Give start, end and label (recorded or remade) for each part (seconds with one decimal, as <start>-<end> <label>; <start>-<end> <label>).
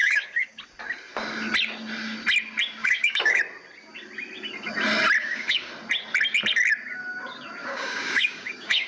0.0-0.6 remade; 0.6-2.8 recorded; 2.8-3.4 remade; 3.4-5.2 recorded; 5.2-5.7 remade; 5.7-7.6 recorded; 7.6-8.9 remade